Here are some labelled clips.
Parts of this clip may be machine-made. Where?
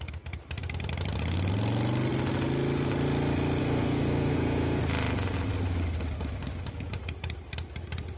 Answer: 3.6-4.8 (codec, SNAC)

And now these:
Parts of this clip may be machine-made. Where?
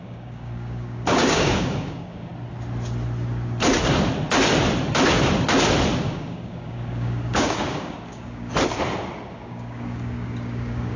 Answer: 0.0-2.3 (codec, DAC); 6.0-8.5; 9.3-11.0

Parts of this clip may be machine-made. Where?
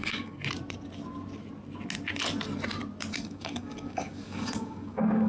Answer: 0.0-0.4 (codec, DAC); 3.1-5.3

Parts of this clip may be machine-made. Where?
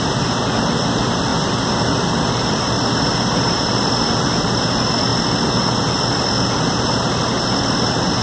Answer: 1.3-4.6 (vocoder, BigVGAN v2)